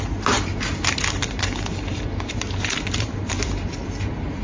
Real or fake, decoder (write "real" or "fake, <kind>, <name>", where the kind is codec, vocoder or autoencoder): fake, vocoder, BigVGAN v2